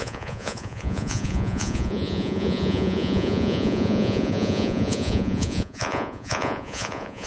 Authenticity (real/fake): fake